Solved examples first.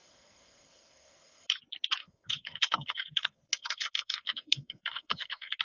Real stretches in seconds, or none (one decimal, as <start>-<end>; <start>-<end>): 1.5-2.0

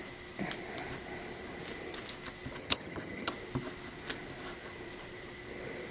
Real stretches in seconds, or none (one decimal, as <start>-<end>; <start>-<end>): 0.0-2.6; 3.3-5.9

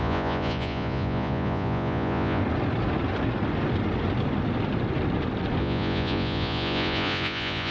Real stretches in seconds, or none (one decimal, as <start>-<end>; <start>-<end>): 2.4-5.6